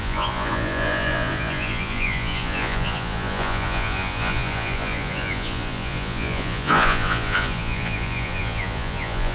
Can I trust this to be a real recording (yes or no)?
no